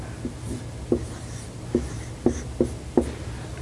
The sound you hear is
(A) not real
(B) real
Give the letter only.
B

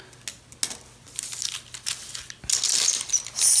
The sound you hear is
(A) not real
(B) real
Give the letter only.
B